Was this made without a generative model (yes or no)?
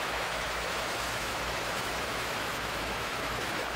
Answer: no